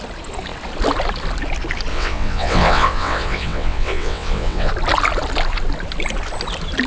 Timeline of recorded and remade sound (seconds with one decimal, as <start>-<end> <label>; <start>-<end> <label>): 0.0-1.9 recorded; 1.9-4.7 remade; 4.7-6.9 recorded